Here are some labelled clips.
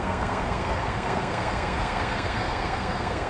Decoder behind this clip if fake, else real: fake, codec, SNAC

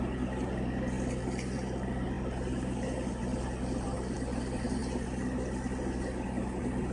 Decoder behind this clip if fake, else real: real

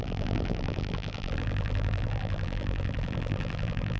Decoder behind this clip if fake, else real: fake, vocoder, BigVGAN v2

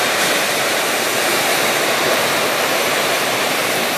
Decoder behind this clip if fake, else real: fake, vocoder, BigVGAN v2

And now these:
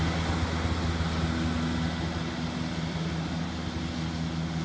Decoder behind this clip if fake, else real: real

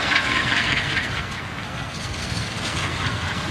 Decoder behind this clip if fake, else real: fake, codec, SNAC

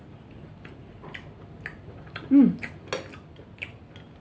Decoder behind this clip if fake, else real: real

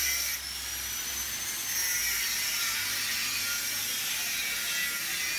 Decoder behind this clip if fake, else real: real